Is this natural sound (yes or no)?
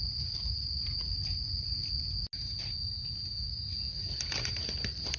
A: yes